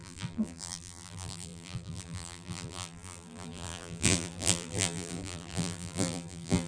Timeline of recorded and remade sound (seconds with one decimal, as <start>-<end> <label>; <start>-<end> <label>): 0.0-6.7 remade